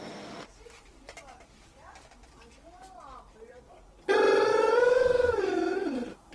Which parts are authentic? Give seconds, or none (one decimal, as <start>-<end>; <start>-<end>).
0.0-4.5; 5.4-6.3